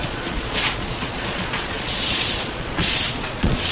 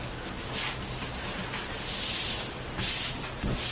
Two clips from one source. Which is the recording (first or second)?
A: second